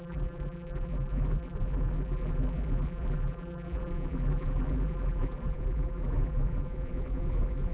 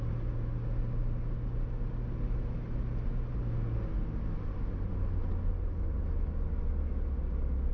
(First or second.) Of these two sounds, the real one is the second